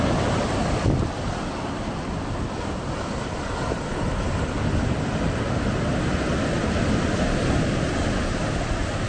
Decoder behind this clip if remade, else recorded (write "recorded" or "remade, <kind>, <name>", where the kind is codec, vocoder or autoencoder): recorded